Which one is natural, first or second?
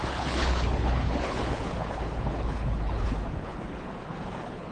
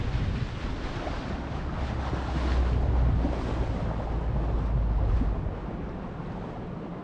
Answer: second